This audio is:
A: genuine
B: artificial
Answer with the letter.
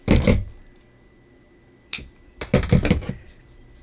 A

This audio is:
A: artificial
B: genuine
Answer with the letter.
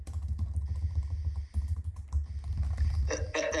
B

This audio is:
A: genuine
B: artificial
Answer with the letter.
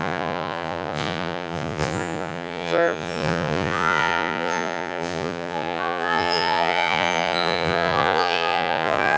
B